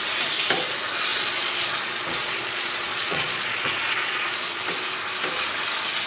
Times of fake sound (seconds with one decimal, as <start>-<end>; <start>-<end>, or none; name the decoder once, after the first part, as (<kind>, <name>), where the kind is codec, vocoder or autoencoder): 1.1-4.6 (vocoder, Vocos)